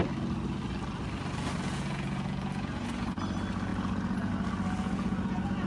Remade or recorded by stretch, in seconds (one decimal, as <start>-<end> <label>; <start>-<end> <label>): 0.0-1.7 recorded; 1.7-3.2 remade; 3.2-3.7 recorded; 3.7-4.3 remade; 4.3-4.8 recorded; 4.8-5.7 remade